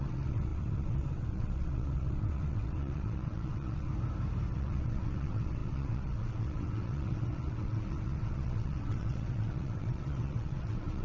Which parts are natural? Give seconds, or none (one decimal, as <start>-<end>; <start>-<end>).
3.9-4.5